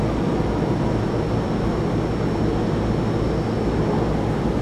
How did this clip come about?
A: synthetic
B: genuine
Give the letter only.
B